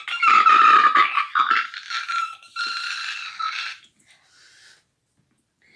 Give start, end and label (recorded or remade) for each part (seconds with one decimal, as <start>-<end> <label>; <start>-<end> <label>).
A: 0.0-5.8 recorded